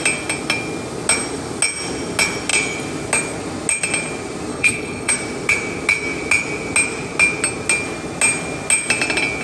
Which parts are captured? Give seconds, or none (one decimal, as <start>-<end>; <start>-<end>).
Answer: 0.0-4.5; 5.1-9.4